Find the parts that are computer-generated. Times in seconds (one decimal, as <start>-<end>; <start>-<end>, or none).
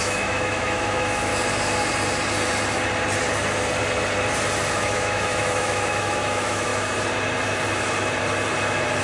0.0-1.3; 4.7-6.7